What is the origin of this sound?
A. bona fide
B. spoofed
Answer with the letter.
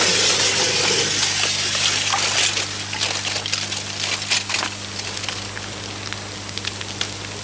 A